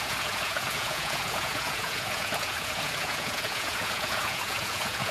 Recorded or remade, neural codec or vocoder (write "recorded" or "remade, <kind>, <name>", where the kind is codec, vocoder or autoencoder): remade, vocoder, Vocos